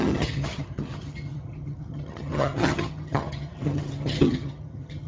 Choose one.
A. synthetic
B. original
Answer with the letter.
A